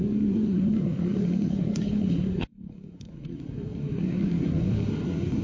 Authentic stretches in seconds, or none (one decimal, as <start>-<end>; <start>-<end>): none